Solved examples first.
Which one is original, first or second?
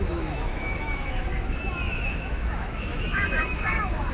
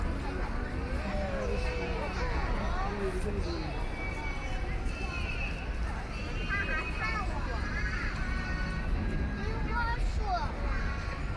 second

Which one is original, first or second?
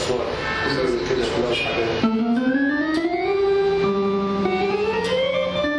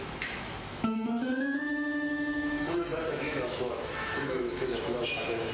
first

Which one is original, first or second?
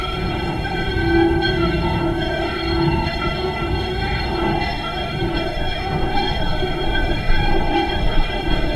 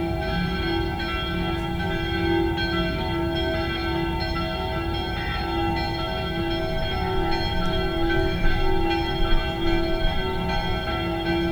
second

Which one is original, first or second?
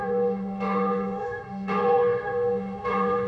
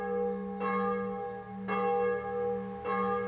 second